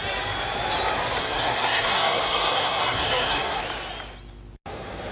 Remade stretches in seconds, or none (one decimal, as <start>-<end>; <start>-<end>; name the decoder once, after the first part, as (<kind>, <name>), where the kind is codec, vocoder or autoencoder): 1.2-3.6 (codec, SNAC)